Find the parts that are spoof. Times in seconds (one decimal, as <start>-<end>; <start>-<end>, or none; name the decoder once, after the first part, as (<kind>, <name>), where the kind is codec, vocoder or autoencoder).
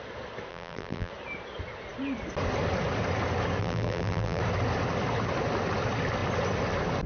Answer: 0.5-1.1 (vocoder, BigVGAN v2); 3.6-4.4